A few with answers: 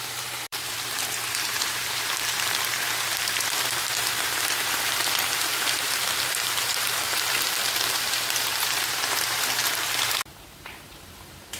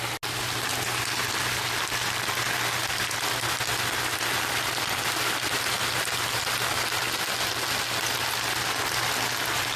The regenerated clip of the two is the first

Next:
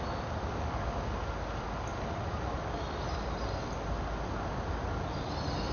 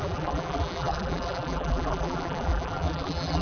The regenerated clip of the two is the second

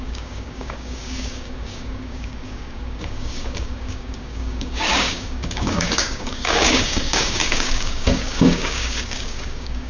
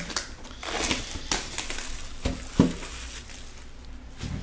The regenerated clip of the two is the first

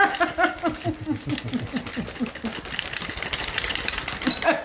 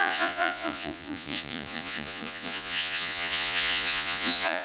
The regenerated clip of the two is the second